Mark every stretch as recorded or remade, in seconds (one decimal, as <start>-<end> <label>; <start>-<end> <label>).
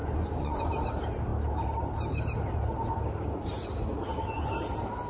0.0-0.7 remade; 0.7-5.1 recorded